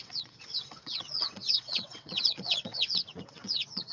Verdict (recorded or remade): remade